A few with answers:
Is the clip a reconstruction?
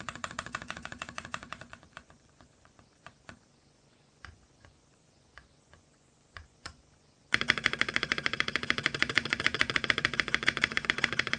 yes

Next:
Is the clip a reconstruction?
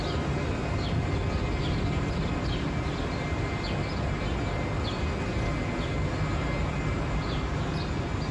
no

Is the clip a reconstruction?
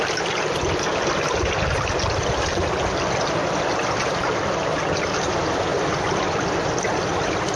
no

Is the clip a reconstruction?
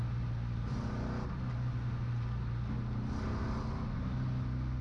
no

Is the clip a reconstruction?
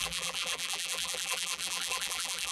yes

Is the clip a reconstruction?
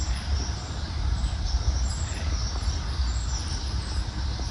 no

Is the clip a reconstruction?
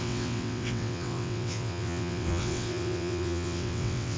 yes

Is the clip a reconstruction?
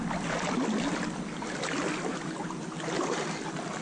no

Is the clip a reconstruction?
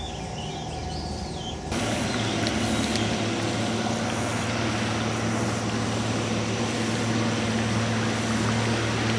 no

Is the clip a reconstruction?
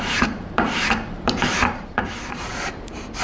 yes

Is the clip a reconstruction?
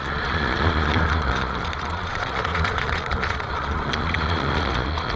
yes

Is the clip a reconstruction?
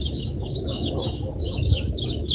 yes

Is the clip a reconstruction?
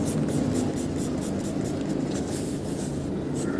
no